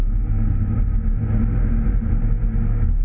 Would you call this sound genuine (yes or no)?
yes